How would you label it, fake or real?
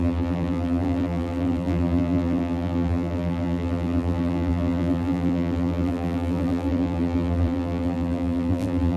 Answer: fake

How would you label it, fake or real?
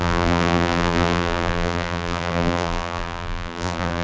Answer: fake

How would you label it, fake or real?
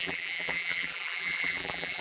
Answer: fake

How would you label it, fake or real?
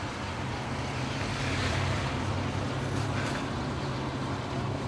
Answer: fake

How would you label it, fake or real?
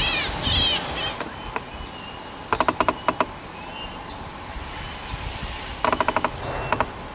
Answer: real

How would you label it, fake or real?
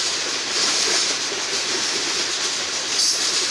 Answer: fake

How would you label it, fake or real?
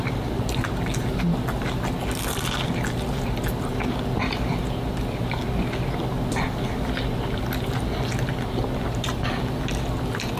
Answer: real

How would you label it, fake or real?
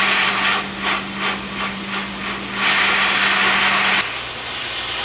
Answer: fake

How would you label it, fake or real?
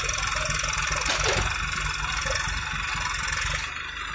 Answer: real